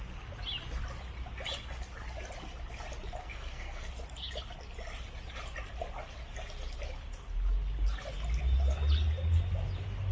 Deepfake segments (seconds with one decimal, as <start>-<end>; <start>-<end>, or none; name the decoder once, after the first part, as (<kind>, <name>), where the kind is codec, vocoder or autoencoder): 3.2-3.9 (codec, SNAC)